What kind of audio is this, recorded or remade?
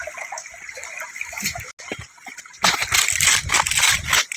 recorded